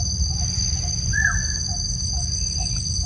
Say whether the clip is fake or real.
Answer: real